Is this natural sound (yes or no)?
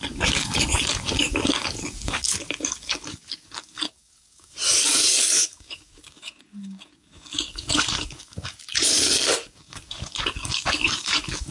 no